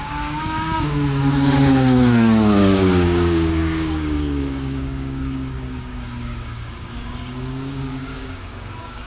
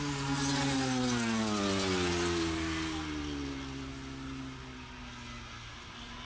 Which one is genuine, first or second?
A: second